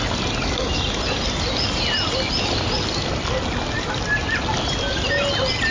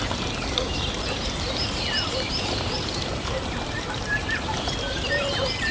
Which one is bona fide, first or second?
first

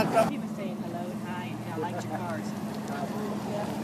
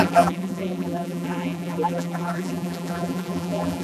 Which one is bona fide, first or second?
first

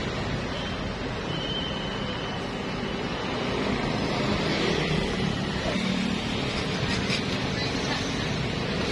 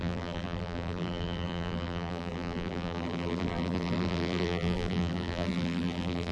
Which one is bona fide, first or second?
first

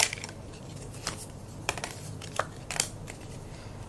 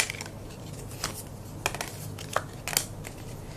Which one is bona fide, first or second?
second